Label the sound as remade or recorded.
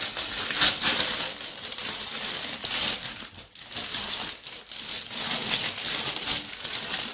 recorded